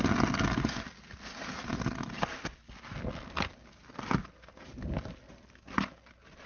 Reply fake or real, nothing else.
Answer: real